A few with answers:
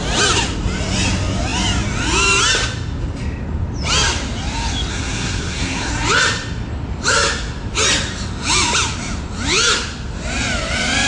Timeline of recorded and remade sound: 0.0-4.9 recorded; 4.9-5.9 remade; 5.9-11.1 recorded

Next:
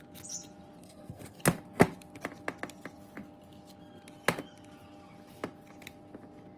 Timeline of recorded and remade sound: 0.0-0.8 recorded; 0.8-1.4 remade; 1.4-6.6 recorded

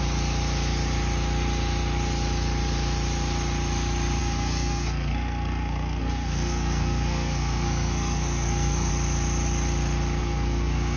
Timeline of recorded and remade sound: 0.0-4.2 recorded; 4.2-8.9 remade; 8.9-10.2 recorded; 10.2-11.0 remade

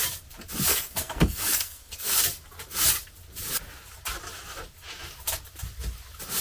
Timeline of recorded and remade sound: 0.0-0.7 recorded; 0.7-2.2 remade; 2.2-6.4 recorded

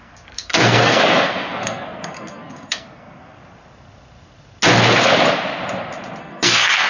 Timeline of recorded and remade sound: 0.0-3.4 remade; 3.4-6.2 recorded; 6.2-6.9 remade

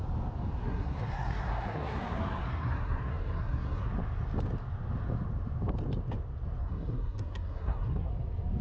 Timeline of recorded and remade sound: 0.0-0.6 recorded; 0.6-3.9 remade; 3.9-6.6 recorded; 6.6-8.1 remade; 8.1-8.6 recorded

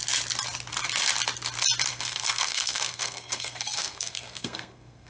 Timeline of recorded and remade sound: 0.0-1.9 recorded; 1.9-5.1 remade

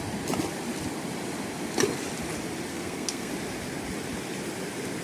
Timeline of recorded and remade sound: 0.0-2.7 recorded; 2.7-3.3 remade; 3.3-5.0 recorded